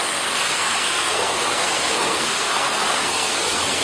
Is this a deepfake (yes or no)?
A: yes